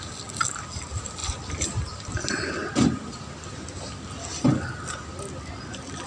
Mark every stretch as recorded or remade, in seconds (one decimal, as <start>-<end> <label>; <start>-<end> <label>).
0.0-1.2 recorded; 1.2-2.1 remade; 2.1-6.1 recorded